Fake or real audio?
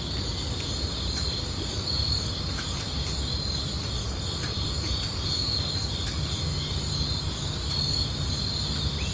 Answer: real